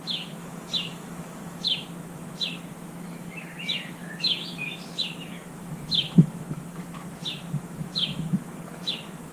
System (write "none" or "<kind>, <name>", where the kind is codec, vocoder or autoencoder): autoencoder, DAC-VAE